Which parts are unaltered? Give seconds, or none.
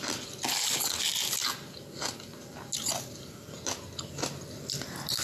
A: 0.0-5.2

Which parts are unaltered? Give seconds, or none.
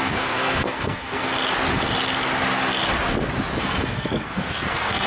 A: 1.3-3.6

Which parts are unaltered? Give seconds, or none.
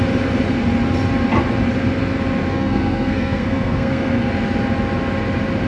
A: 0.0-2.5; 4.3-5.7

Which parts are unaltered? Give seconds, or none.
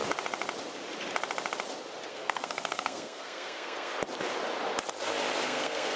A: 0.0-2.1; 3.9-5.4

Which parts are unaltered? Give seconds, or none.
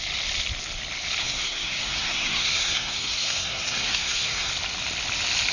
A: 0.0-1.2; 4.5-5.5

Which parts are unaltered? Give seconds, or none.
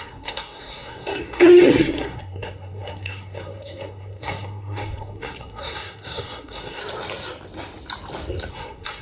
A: 6.8-8.5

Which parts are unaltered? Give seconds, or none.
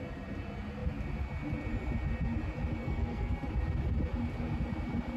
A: 0.0-2.8; 3.5-5.2